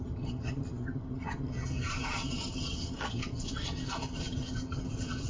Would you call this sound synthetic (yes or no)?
yes